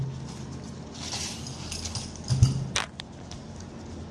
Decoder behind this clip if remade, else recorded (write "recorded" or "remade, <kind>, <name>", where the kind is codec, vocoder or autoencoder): recorded